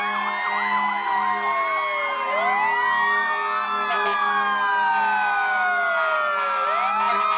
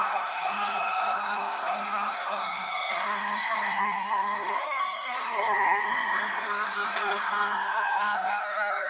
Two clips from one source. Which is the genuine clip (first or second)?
first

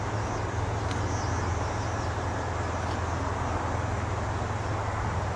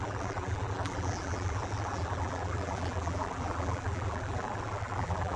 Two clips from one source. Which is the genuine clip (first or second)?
first